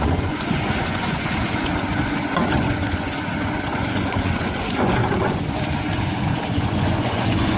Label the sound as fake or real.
fake